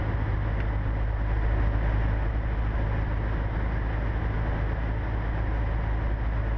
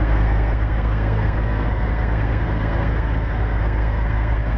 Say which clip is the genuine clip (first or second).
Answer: first